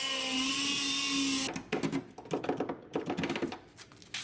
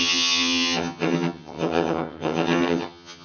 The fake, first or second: second